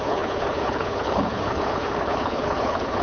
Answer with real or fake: fake